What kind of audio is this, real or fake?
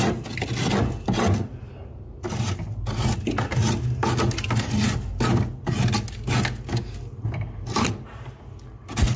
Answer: real